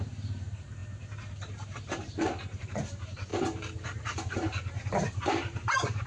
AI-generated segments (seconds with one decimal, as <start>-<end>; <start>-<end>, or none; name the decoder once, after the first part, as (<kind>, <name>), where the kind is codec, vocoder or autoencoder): 0.0-6.1 (vocoder, BigVGAN v2)